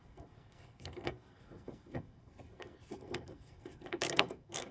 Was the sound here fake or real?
fake